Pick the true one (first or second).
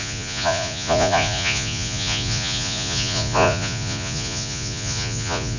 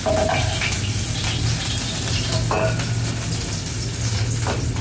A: second